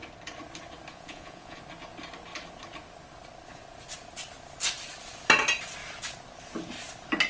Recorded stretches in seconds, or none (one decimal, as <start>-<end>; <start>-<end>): 0.0-0.9; 1.6-7.3